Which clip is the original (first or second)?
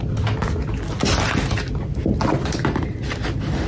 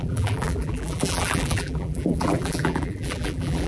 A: first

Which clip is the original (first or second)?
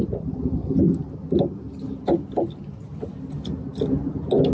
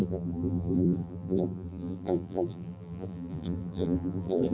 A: first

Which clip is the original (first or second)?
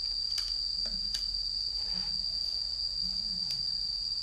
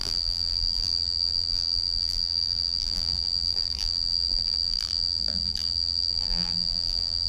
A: first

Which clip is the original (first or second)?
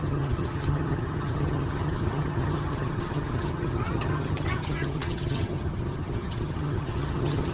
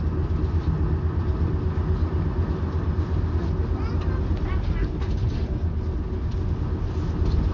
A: second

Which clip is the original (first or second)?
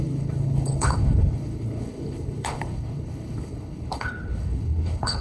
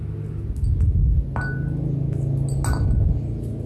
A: second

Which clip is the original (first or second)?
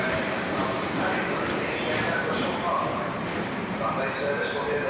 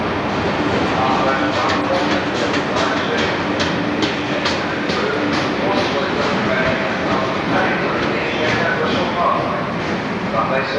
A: second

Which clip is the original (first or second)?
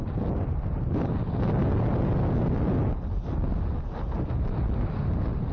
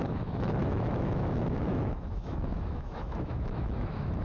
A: first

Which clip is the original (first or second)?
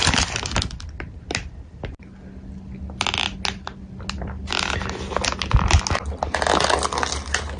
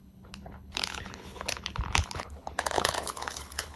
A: first